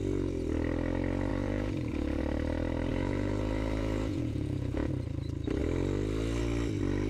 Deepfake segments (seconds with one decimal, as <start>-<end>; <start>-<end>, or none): 1.3-2.2; 2.9-4.9